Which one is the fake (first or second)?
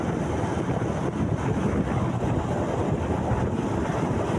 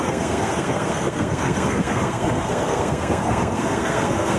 second